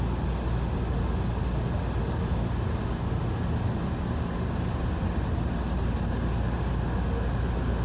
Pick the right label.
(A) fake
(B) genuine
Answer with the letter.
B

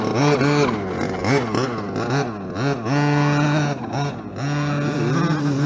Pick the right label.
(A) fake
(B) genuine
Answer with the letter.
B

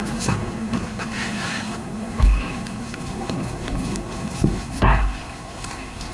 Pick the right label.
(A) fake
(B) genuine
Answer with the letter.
A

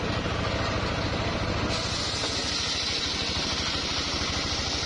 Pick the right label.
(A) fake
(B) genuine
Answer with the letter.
B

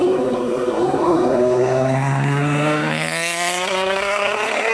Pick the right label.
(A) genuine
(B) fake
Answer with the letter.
B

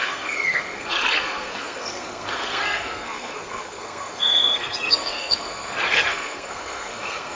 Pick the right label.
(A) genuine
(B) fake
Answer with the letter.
B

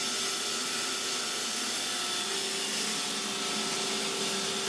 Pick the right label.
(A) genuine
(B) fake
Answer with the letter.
A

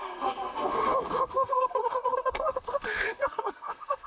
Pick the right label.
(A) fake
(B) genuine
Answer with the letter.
A